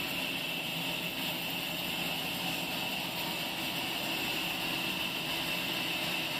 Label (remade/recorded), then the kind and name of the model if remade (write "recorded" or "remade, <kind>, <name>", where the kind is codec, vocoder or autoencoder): recorded